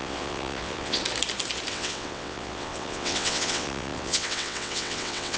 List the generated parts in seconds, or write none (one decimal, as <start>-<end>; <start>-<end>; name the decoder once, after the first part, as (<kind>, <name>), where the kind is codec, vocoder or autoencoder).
0.0-1.0 (vocoder, WaveNeXt); 1.7-5.4